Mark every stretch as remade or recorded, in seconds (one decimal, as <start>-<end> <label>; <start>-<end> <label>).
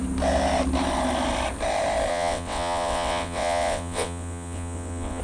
0.0-2.1 recorded; 2.1-5.2 remade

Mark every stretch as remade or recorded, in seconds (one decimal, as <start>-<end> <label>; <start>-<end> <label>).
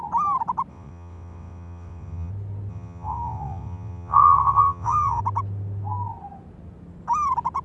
0.0-0.7 recorded; 0.7-2.3 remade; 2.3-2.7 recorded; 2.7-5.2 remade; 5.2-7.6 recorded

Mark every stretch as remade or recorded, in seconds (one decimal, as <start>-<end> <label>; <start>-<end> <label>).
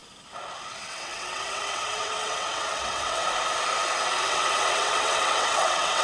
0.0-0.7 recorded; 0.7-3.2 remade; 3.2-4.3 recorded; 4.3-6.0 remade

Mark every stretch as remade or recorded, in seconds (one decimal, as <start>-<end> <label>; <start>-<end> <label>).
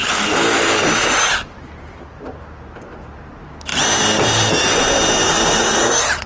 0.0-6.3 recorded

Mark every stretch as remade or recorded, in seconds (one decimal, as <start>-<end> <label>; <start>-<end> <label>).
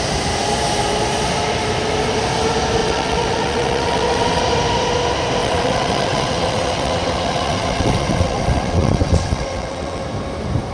0.0-2.8 recorded; 2.8-4.4 remade; 4.4-5.4 recorded; 5.4-10.0 remade; 10.0-10.7 recorded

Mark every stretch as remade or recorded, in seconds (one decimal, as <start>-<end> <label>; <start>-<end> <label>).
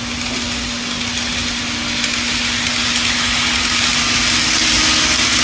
0.0-5.4 recorded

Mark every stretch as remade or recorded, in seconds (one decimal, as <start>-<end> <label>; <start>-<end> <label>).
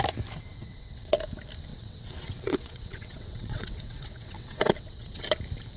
0.0-0.5 recorded; 0.5-1.2 remade; 1.2-1.7 recorded; 1.7-5.2 remade; 5.2-5.8 recorded